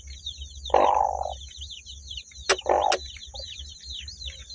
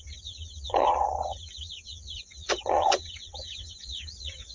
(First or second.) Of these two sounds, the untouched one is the first